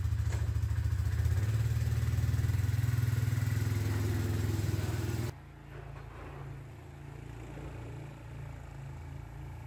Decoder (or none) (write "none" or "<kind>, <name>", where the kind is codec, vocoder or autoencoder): none